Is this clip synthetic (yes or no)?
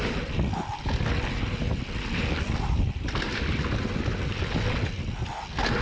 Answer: no